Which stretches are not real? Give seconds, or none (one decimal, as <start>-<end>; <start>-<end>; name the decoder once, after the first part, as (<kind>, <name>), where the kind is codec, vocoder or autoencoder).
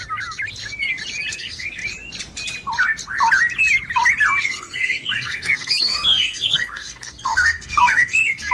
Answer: 1.3-1.8 (codec, SNAC); 4.4-8.5